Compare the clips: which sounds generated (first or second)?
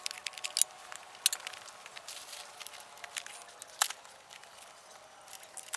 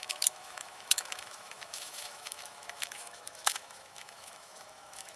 second